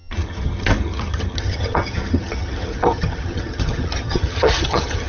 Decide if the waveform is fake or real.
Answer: fake